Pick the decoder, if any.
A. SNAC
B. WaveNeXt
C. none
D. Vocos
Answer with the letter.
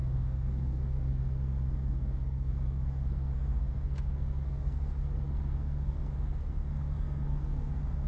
A